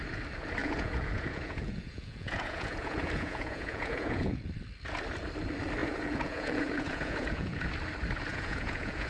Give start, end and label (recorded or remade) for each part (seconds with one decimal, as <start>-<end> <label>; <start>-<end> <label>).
0.0-0.6 recorded; 0.6-4.5 remade; 4.5-5.8 recorded; 5.8-7.7 remade; 7.7-8.3 recorded; 8.3-9.1 remade